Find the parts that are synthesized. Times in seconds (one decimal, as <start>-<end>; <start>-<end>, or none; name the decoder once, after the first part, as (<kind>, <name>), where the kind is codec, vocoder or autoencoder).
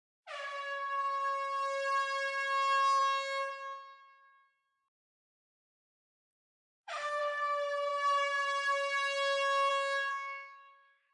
6.3-7.2 (autoencoder, DAC-VAE); 10.1-11.1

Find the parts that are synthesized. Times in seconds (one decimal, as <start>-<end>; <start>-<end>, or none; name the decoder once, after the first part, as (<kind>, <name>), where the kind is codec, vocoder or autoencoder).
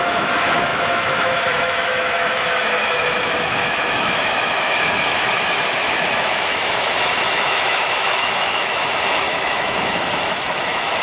0.0-11.0 (autoencoder, DAC-VAE)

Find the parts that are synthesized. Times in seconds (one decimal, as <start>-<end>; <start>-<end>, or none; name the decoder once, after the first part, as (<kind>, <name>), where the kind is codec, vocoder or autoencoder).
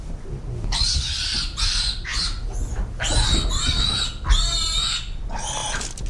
none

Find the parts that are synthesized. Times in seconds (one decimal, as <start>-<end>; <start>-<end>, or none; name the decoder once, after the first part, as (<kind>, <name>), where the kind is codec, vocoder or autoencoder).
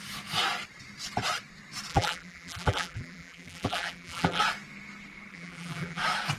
1.9-4.4 (vocoder, BigVGAN v2); 5.3-6.0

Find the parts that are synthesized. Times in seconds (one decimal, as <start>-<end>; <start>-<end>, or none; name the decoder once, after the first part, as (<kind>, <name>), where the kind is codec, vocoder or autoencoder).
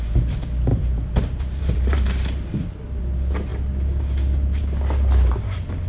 0.7-3.0 (vocoder, BigVGAN v2)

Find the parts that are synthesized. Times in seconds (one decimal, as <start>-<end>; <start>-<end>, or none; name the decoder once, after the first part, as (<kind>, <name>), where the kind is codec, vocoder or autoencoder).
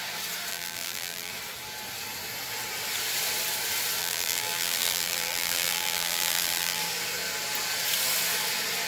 0.5-1.3 (vocoder, BigVGAN v2); 4.0-6.8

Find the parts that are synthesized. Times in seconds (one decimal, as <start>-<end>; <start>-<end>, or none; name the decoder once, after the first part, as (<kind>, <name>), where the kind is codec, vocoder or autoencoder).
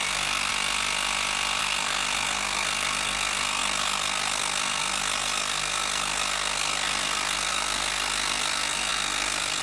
0.0-0.5 (codec, SNAC); 1.6-9.6